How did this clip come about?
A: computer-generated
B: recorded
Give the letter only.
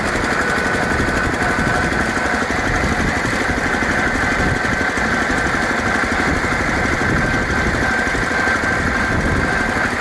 B